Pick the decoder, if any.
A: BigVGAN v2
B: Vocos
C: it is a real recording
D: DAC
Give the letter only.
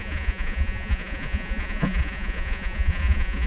B